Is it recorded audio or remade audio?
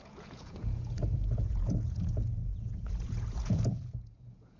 remade